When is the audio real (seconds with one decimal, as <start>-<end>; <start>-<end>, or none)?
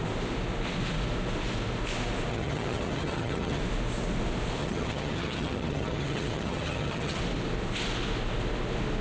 0.0-2.3; 3.6-4.6; 7.2-9.0